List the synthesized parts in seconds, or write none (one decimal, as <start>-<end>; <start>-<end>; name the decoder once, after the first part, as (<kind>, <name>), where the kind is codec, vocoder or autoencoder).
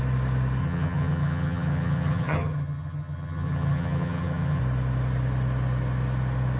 0.6-4.6 (vocoder, HiFi-GAN)